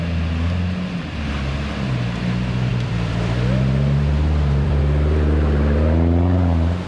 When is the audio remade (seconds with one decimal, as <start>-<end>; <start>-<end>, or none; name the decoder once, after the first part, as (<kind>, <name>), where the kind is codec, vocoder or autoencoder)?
2.7-4.8 (vocoder, BigVGAN v2)